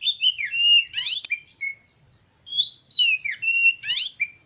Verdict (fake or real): real